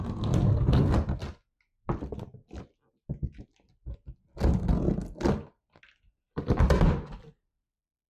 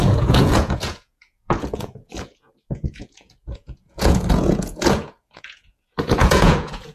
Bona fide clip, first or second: first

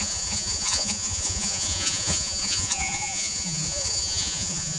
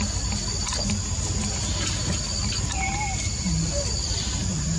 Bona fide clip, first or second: second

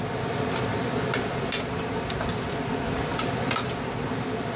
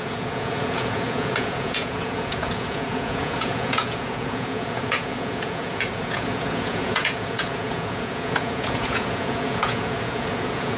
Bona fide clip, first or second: first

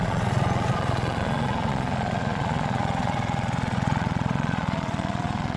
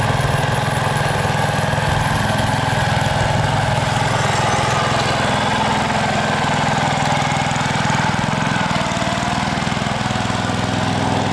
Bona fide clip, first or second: second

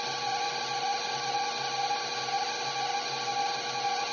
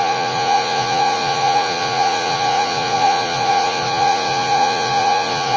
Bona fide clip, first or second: first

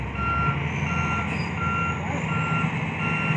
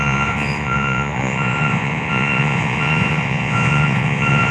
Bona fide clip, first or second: first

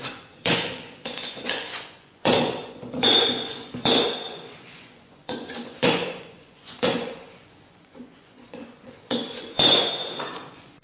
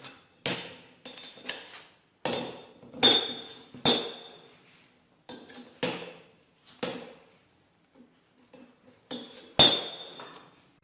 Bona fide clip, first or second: second